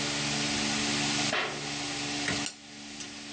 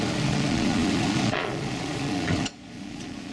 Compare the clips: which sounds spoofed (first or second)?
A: second